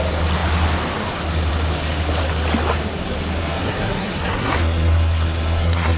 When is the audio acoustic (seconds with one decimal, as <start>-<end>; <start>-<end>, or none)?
0.0-3.4